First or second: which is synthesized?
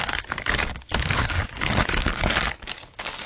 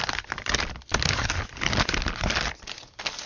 first